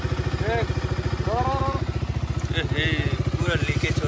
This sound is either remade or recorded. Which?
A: recorded